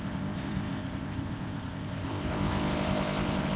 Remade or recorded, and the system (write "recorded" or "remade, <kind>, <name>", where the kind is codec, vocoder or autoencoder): remade, codec, ZipCodec